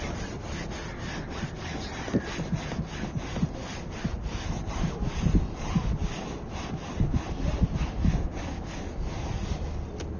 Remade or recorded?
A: recorded